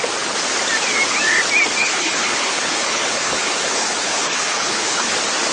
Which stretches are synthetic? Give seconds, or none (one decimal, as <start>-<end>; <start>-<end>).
1.8-5.1